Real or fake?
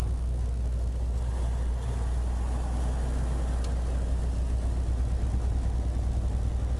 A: real